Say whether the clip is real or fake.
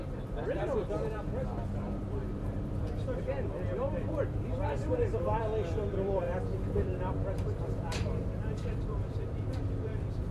fake